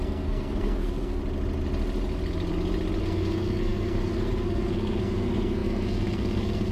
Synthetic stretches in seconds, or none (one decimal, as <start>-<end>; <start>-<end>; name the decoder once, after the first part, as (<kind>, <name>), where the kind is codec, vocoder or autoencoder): 0.0-1.2 (codec, SNAC); 3.0-6.7